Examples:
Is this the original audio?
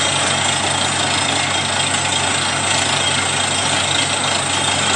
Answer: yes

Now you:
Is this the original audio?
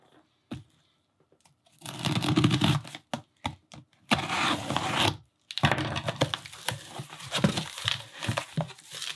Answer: yes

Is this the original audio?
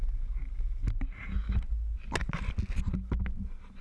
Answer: yes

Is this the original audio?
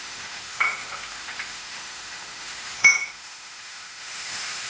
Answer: no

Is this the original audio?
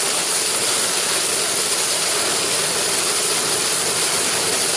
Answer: yes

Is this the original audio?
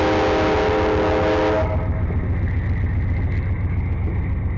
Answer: yes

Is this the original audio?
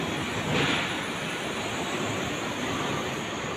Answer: yes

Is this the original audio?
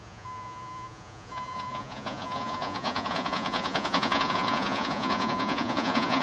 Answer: no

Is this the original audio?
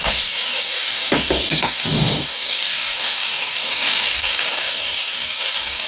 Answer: no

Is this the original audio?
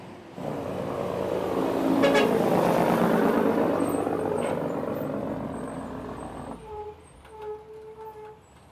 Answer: yes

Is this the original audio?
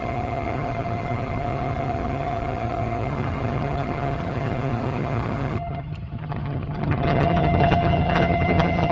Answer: no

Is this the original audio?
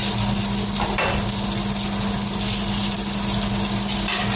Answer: yes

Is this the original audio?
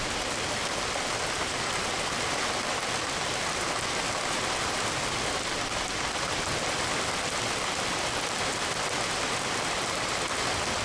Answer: yes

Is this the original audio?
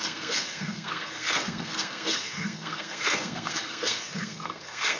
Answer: no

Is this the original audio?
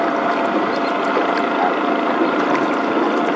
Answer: yes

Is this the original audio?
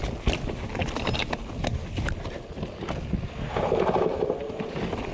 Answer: yes